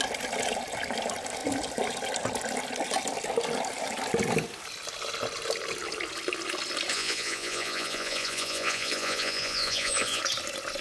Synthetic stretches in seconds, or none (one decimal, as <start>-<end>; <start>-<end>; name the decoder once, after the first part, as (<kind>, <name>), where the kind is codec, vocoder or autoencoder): 6.9-10.2 (vocoder, Vocos)

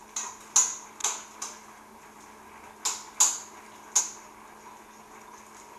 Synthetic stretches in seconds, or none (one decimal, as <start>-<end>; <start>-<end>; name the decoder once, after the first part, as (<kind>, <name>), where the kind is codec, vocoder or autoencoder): none